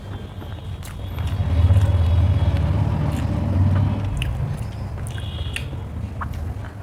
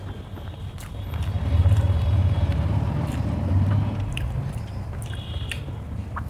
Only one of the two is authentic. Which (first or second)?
first